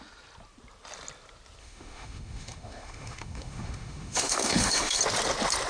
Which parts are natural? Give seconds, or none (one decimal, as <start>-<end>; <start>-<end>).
0.0-1.6; 5.0-5.7